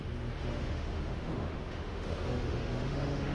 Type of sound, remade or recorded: remade